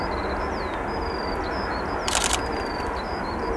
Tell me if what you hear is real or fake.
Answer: real